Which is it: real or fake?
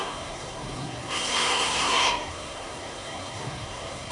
fake